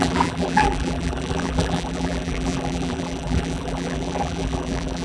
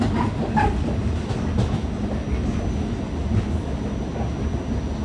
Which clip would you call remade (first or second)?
first